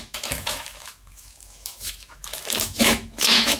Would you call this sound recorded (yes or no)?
no